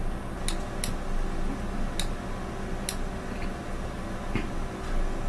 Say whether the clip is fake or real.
real